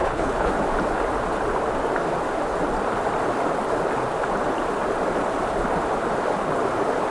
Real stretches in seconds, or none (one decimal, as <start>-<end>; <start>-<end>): 0.5-7.1